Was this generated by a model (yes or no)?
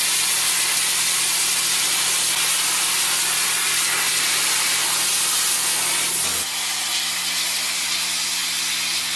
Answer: no